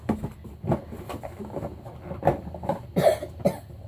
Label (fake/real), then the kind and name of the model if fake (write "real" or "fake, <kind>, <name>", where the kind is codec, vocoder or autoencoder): real